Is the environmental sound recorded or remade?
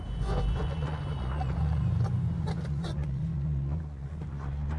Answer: remade